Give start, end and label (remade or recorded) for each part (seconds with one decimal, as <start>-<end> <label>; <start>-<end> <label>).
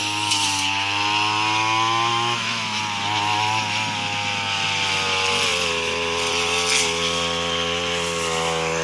0.0-2.1 recorded; 2.1-2.8 remade; 2.8-8.8 recorded